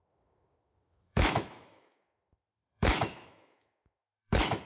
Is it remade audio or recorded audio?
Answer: remade